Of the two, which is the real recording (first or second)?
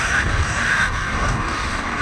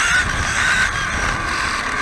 second